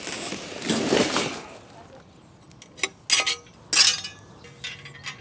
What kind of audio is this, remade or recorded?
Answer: recorded